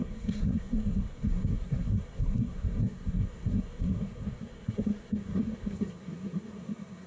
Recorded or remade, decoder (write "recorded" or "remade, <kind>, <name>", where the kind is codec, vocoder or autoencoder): remade, codec, SNAC